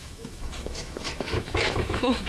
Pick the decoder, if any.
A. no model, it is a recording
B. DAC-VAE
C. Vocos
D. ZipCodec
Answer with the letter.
B